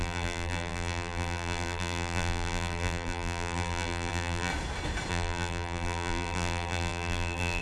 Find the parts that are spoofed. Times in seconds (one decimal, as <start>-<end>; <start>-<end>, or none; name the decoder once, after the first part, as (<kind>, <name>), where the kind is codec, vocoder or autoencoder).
0.0-4.5 (vocoder, BigVGAN v2); 5.1-7.6